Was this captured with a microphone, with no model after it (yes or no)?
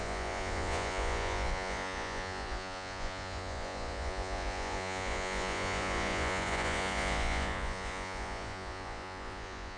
no